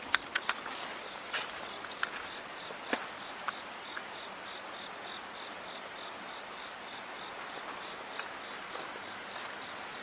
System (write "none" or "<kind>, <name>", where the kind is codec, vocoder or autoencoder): vocoder, BigVGAN v2